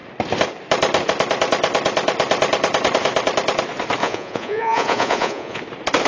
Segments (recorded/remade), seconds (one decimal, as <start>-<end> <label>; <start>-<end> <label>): 0.0-4.0 recorded; 4.0-5.6 remade; 5.6-6.1 recorded